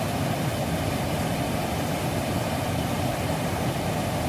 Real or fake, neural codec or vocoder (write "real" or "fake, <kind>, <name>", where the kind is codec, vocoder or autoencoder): real